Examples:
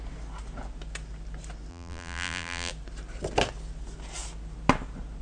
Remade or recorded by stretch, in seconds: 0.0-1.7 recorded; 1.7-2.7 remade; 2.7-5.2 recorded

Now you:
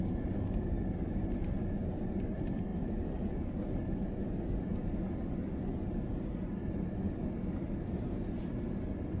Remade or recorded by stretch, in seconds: 0.0-9.2 recorded